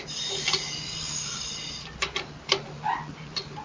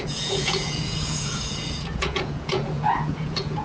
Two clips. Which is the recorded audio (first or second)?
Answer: first